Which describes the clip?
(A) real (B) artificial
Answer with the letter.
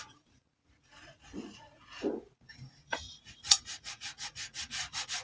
B